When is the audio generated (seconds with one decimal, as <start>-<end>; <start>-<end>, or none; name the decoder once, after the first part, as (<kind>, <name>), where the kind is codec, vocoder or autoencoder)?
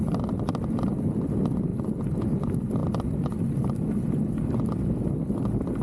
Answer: none